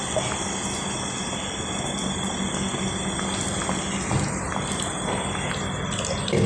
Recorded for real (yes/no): yes